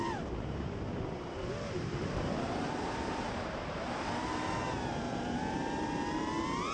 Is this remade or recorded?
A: remade